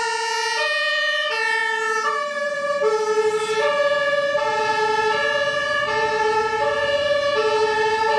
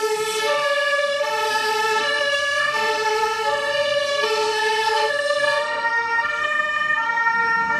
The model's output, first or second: second